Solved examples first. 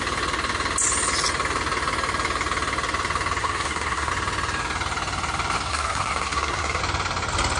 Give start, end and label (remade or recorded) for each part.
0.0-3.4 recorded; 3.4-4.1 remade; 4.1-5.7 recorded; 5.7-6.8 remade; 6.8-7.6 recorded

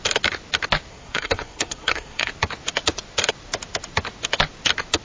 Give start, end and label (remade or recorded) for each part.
0.0-0.9 recorded; 0.9-2.3 remade; 2.3-5.0 recorded

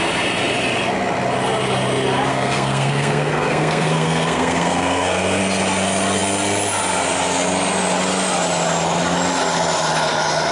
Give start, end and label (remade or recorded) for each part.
0.0-2.3 recorded; 2.3-5.4 remade; 5.4-10.5 recorded

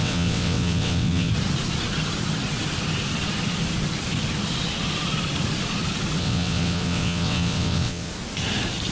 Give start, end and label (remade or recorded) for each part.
0.0-1.3 remade; 1.3-6.2 recorded; 6.2-8.1 remade; 8.1-8.9 recorded

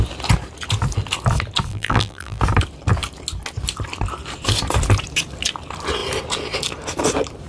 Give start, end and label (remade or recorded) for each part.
0.0-1.7 recorded; 1.7-2.4 remade; 2.4-7.5 recorded

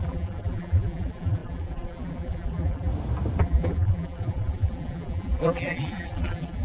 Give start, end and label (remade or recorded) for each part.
0.0-2.9 remade; 2.9-3.4 recorded; 3.4-6.6 remade

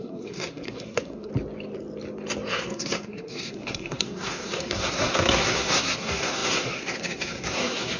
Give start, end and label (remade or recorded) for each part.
0.0-1.3 remade; 1.3-2.5 recorded; 2.5-8.0 remade

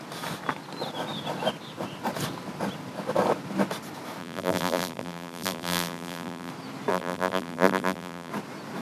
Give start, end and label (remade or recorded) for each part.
0.0-4.2 recorded; 4.2-6.5 remade; 6.5-6.9 recorded; 6.9-8.3 remade; 8.3-8.8 recorded